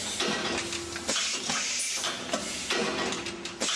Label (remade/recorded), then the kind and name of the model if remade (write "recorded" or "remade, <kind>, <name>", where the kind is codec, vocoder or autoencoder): recorded